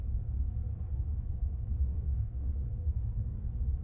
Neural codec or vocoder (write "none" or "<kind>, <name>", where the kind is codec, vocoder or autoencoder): codec, SNAC